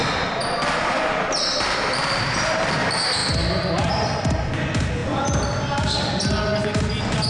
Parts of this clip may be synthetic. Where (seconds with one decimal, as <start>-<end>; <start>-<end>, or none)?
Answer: none